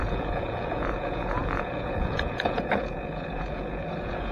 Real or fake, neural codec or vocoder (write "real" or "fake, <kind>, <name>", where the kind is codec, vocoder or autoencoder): fake, vocoder, Vocos